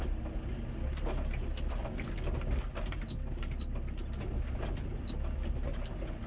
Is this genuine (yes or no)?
yes